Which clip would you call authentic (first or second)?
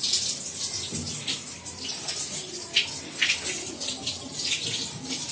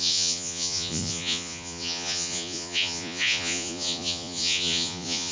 first